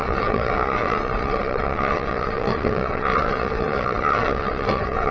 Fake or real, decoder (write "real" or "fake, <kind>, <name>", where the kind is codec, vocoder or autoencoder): fake, vocoder, WaveNeXt